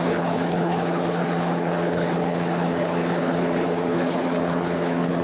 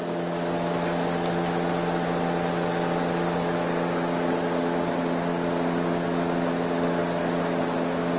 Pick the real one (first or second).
second